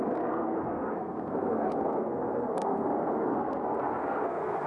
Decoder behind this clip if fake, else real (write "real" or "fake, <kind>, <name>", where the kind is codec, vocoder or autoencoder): fake, codec, SNAC